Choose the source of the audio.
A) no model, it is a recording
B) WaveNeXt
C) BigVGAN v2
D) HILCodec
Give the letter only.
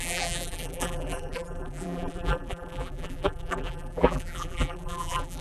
C